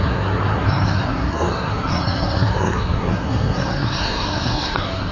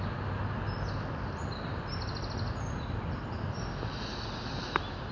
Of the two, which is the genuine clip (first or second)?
second